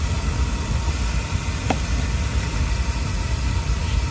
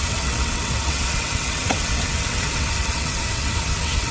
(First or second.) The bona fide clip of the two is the first